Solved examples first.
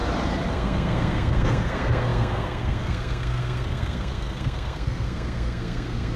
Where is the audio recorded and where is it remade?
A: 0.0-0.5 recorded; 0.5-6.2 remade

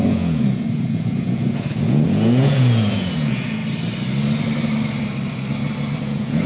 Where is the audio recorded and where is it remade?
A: 0.0-3.6 remade; 3.6-6.0 recorded; 6.0-6.5 remade

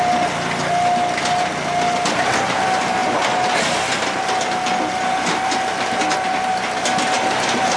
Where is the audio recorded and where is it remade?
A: 0.0-7.8 recorded

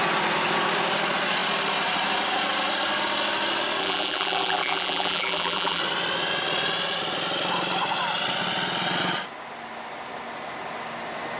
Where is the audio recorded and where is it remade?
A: 0.0-3.8 recorded; 3.8-5.8 remade; 5.8-11.4 recorded

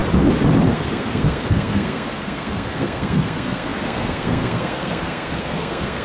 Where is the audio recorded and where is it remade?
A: 0.0-0.7 recorded; 0.7-6.0 remade